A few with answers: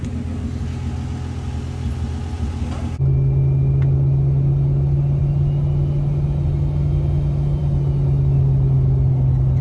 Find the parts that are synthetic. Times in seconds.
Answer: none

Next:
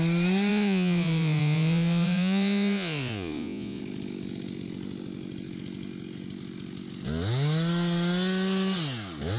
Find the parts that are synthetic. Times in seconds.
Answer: 0.5-3.8 (vocoder, Vocos)

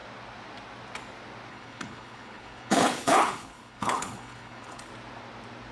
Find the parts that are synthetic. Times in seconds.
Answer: 1.5-4.9 (codec, HILCodec)

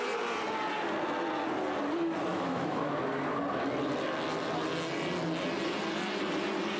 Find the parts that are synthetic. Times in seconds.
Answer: 2.3-3.0 (autoencoder, DAC-VAE)

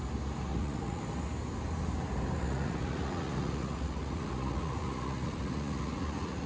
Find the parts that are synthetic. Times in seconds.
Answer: 0.5-1.0 (vocoder, Vocos); 2.4-6.5

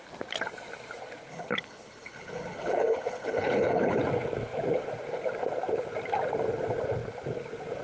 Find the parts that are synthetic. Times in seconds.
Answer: 1.3-4.0 (codec, HILCodec)